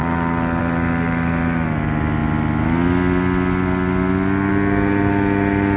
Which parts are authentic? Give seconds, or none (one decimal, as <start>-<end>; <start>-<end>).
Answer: 0.0-5.8